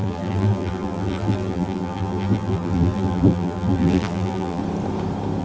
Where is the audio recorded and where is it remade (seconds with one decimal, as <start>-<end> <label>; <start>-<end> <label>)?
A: 0.0-4.6 remade; 4.6-5.4 recorded